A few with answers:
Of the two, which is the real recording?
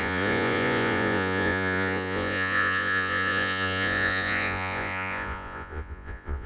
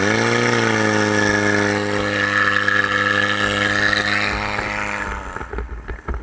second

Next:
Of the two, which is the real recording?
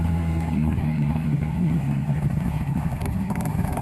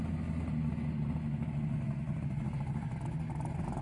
second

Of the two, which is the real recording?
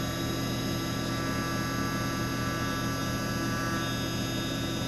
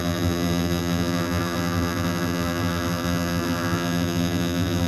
first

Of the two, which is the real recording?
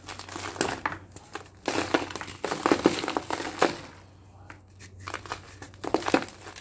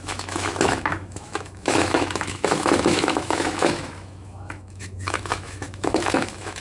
first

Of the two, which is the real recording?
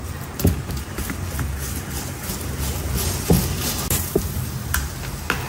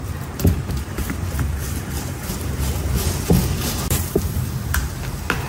first